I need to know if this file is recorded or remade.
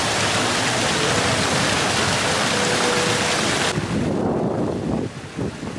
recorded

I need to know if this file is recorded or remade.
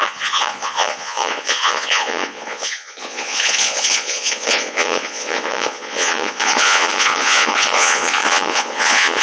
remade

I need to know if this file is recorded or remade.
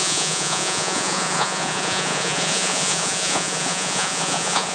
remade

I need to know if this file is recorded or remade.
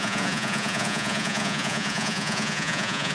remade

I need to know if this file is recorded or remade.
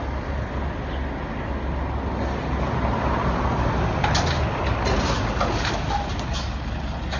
recorded